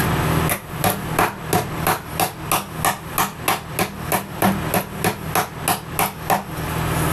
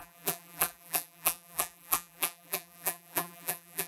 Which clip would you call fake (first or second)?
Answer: second